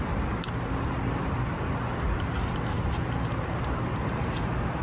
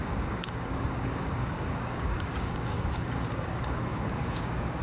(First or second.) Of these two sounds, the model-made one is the second